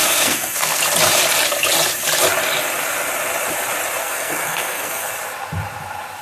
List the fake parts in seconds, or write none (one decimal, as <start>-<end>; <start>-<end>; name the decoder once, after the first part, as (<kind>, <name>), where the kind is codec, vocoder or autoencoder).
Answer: 0.0-0.8 (codec, SNAC); 4.0-5.1

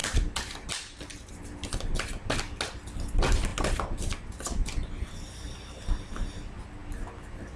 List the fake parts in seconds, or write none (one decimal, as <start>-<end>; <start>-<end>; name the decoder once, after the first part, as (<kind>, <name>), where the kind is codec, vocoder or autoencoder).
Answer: none

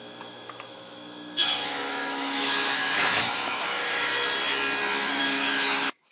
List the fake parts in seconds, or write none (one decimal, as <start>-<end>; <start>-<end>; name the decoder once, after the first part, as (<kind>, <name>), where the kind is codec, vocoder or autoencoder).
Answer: 0.0-4.1 (autoencoder, DAC-VAE); 5.2-6.1